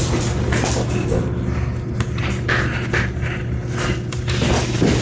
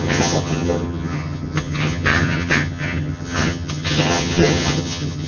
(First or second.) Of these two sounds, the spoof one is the second